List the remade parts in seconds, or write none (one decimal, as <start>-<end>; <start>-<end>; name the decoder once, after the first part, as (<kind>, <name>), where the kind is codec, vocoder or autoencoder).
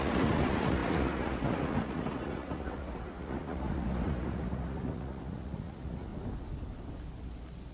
0.0-6.1 (vocoder, Vocos)